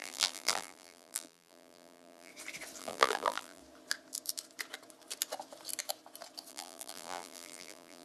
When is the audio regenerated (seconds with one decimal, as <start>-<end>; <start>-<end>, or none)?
0.0-2.3; 2.8-3.6; 6.5-8.0